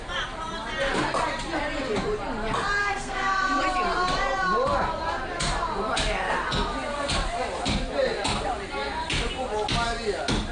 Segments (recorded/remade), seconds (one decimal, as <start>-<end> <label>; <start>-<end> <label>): 0.0-2.8 recorded; 2.8-3.6 remade; 3.6-10.5 recorded